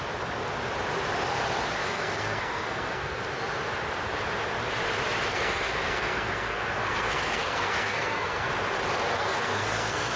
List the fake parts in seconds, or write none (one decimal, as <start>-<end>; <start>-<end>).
1.8-3.2; 5.3-8.5; 9.2-10.2